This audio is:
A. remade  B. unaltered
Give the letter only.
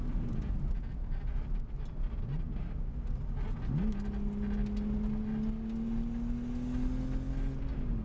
B